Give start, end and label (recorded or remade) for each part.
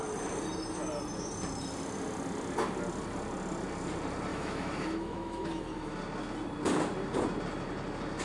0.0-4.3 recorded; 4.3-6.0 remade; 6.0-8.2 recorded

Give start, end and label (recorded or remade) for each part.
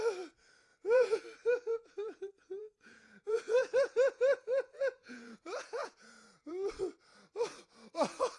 0.0-0.7 recorded; 0.7-1.2 remade; 1.2-1.7 recorded; 1.7-6.7 remade; 6.7-8.4 recorded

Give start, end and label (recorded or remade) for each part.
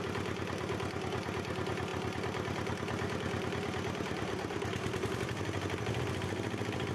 0.0-6.9 recorded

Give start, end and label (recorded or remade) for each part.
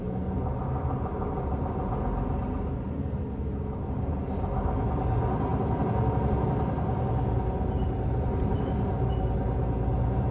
0.0-10.3 recorded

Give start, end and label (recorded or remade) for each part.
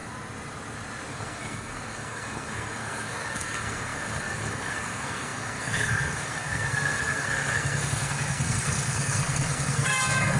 0.0-1.1 recorded; 1.1-10.4 remade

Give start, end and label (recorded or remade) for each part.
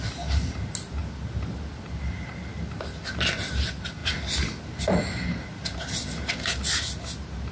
0.0-7.5 recorded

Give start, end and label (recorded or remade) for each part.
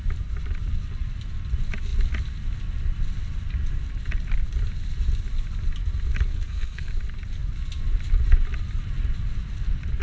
0.0-6.3 recorded; 6.3-6.9 remade; 6.9-10.0 recorded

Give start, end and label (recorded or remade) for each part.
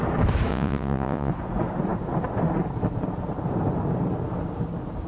0.0-0.5 recorded; 0.5-1.3 remade; 1.3-5.1 recorded